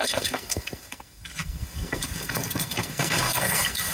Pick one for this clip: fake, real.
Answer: fake